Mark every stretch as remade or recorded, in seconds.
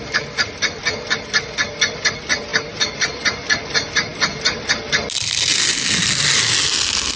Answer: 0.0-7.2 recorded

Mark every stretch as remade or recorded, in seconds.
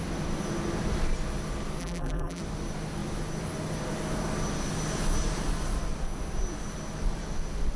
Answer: 0.0-1.8 recorded; 1.8-2.4 remade; 2.4-7.8 recorded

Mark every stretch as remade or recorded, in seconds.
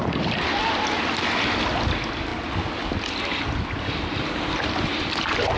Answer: 0.0-5.6 recorded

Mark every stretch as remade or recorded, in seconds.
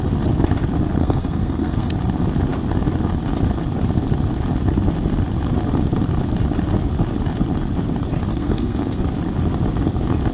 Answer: 0.0-1.0 recorded; 1.0-1.9 remade; 1.9-8.3 recorded; 8.3-9.0 remade; 9.0-10.3 recorded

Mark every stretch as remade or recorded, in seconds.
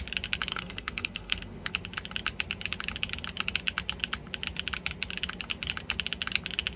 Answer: 0.0-0.5 recorded; 0.5-1.7 remade; 1.7-6.8 recorded